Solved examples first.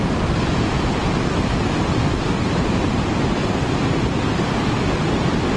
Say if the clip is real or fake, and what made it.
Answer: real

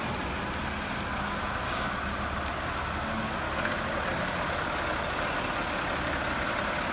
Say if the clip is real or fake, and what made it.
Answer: real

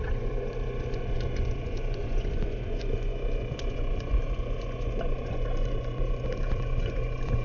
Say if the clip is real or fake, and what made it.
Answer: fake, vocoder, Vocos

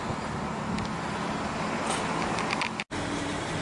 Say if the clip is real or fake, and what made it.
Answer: real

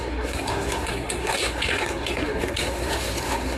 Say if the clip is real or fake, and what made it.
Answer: fake, codec, SNAC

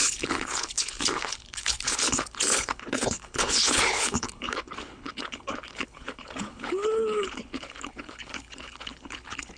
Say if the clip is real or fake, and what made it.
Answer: fake, codec, HILCodec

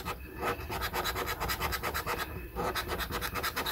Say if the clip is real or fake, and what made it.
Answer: real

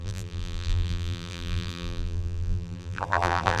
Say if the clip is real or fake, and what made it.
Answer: fake, vocoder, BigVGAN v2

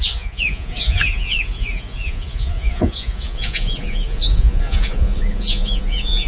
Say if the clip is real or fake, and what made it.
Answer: fake, vocoder, Vocos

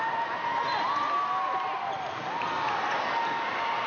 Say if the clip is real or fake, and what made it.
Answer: real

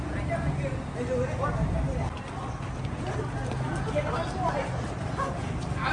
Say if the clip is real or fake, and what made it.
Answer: real